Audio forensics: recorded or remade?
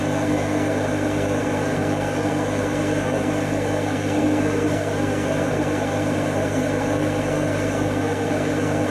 remade